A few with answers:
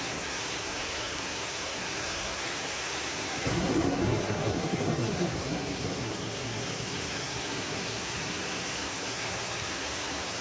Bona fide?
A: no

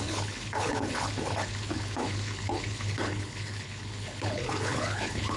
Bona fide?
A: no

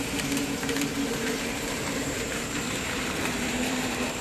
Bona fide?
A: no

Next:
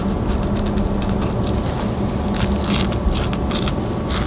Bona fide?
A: yes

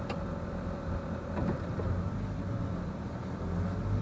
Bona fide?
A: yes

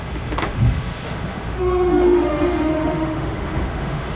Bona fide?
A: no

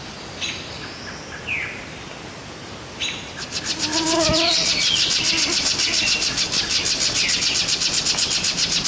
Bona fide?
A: yes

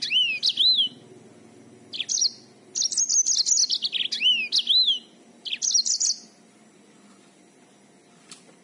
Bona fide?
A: yes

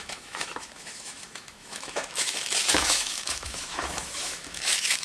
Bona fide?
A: no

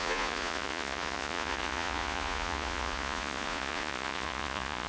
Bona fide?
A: no